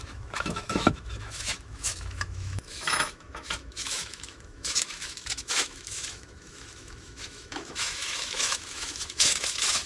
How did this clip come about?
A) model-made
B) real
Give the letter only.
A